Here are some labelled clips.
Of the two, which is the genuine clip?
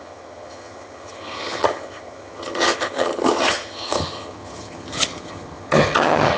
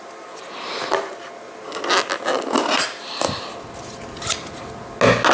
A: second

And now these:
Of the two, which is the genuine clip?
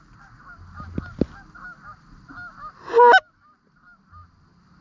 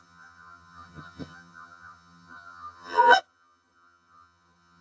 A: first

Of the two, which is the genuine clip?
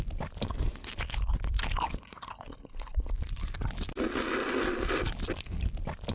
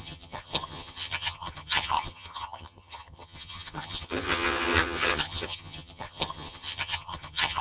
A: first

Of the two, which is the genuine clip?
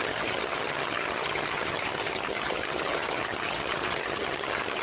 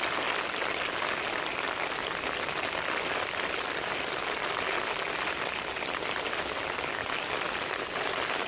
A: second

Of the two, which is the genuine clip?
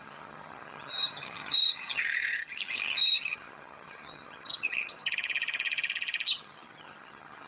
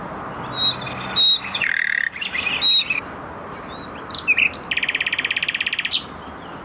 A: second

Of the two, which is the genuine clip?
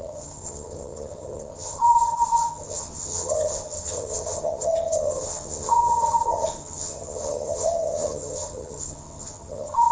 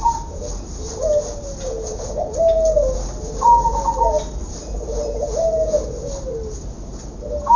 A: second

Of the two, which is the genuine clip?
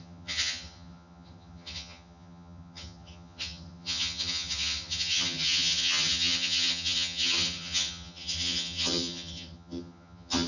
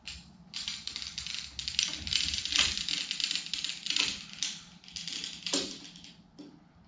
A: second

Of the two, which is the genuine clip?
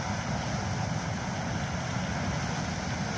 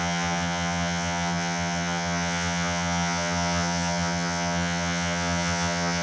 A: first